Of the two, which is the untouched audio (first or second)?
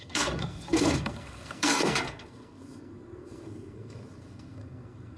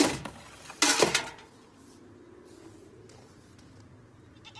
second